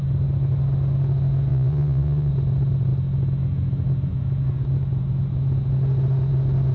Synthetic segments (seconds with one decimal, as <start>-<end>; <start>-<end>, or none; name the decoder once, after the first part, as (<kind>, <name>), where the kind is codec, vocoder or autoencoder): 1.5-2.3 (vocoder, Vocos)